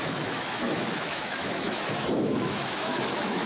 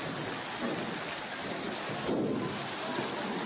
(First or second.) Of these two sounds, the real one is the second